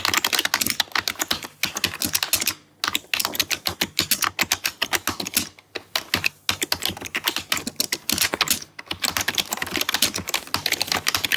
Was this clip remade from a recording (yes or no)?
no